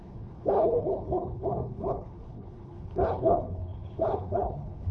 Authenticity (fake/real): fake